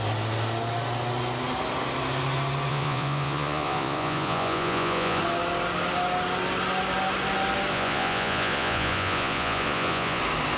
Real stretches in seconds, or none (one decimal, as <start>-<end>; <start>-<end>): 0.0-2.7; 5.2-7.7; 10.2-10.6